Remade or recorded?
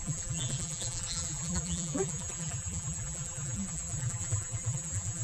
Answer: remade